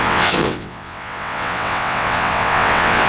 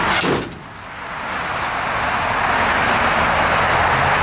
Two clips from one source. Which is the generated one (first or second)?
first